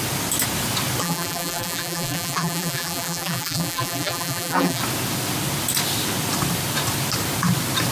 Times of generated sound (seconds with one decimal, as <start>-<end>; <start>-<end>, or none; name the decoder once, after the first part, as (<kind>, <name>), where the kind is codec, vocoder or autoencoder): 1.0-4.8 (vocoder, BigVGAN v2)

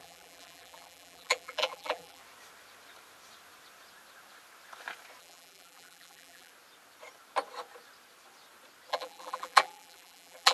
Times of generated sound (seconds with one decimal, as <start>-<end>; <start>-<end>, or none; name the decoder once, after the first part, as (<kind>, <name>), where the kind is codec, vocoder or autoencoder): 0.0-2.2 (vocoder, BigVGAN v2); 5.2-6.5; 8.9-10.5

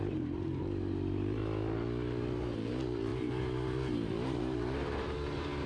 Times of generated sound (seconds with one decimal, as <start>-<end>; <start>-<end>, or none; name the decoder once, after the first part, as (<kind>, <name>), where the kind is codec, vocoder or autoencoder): 0.0-1.4 (vocoder, BigVGAN v2); 2.7-5.7

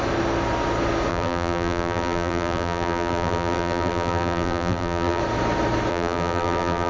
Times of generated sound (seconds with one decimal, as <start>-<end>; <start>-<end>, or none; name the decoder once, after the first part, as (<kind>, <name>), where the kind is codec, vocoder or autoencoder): 1.1-5.2 (vocoder, BigVGAN v2); 5.9-6.9